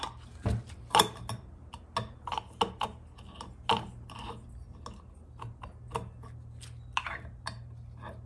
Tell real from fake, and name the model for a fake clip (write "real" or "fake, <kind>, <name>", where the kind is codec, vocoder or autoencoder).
real